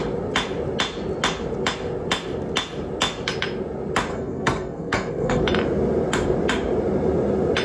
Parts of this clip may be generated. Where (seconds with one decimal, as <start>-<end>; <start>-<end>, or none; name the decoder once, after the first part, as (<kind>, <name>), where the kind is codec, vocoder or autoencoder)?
4.1-5.4 (codec, SNAC)